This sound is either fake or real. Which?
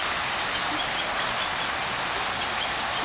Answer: real